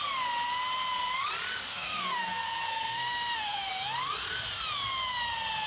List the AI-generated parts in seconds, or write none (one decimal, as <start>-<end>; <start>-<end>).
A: 1.7-3.7

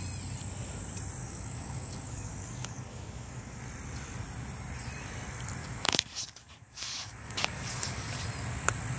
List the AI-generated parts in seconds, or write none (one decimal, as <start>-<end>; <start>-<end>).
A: 1.2-3.6; 5.6-8.2

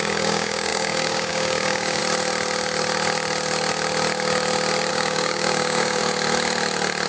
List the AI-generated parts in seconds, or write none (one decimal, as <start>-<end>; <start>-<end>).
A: 0.0-2.0; 4.9-6.0

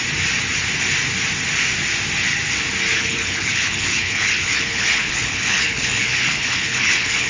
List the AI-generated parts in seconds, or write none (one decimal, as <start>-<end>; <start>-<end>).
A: 2.9-7.3

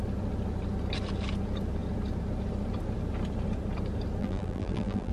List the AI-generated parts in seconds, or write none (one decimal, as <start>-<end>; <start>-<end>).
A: 4.2-5.1

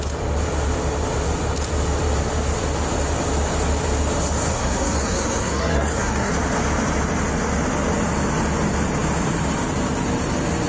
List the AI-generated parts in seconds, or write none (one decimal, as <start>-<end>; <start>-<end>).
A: 4.5-6.3

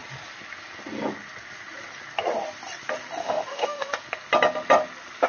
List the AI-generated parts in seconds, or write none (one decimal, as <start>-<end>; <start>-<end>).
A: 3.2-3.9

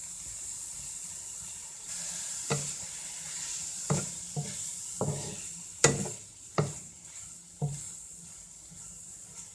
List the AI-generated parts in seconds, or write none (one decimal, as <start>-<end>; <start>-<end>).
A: 1.6-4.2; 6.2-7.2